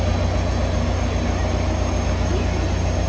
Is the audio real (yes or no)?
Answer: yes